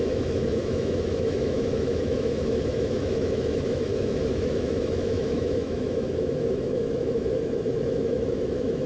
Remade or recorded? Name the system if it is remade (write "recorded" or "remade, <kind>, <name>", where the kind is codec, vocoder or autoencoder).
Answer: remade, autoencoder, DAC-VAE